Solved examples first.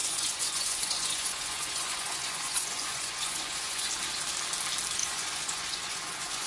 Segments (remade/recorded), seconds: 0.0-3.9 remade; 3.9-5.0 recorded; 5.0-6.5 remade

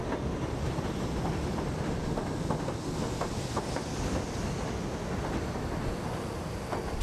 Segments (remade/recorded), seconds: 0.0-7.0 recorded

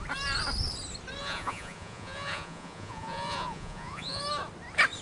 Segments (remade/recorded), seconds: 0.0-1.2 recorded; 1.2-4.2 remade; 4.2-5.0 recorded

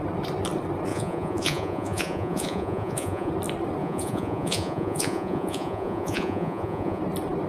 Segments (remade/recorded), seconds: 0.0-0.9 recorded; 0.9-3.3 remade; 3.3-3.8 recorded; 3.8-7.0 remade; 7.0-7.5 recorded